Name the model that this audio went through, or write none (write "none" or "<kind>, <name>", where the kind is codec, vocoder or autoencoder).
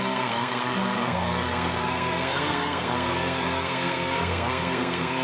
codec, SNAC